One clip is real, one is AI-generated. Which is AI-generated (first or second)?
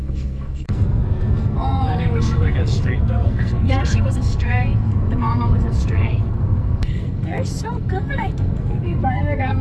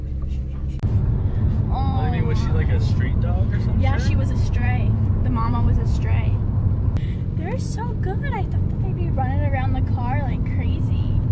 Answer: first